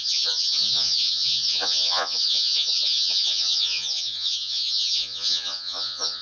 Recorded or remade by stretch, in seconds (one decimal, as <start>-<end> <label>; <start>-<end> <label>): 0.0-6.2 remade